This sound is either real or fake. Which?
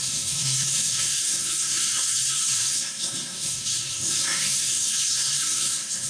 fake